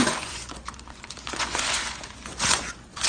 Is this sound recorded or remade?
remade